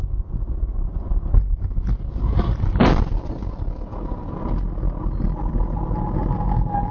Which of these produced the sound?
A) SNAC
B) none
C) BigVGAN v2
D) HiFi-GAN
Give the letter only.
B